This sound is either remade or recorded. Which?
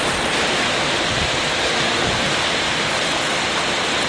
remade